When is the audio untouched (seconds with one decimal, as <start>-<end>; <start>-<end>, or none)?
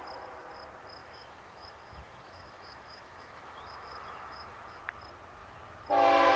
0.0-1.0; 4.8-6.4